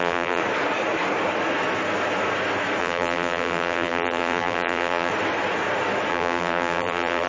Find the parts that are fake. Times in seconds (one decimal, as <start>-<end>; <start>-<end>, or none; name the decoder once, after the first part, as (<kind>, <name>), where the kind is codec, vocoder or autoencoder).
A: 0.0-0.4 (vocoder, BigVGAN v2); 2.8-5.1; 6.1-7.3